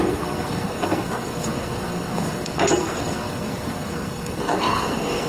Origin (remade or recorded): remade